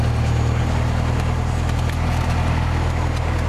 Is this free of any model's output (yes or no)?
yes